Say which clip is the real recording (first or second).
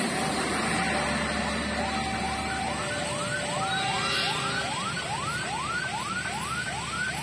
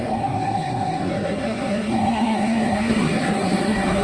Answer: first